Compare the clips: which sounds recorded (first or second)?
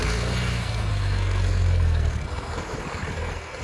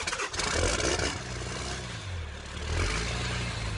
second